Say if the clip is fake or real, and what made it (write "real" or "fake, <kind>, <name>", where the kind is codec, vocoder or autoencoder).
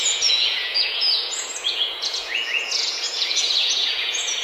fake, vocoder, Vocos